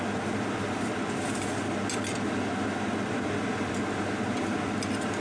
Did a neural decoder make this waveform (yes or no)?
no